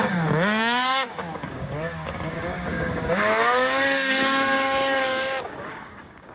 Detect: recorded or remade remade